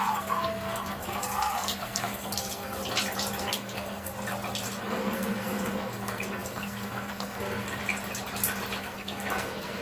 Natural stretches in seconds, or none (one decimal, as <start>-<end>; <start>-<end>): 2.8-3.4; 4.1-4.8; 7.8-8.8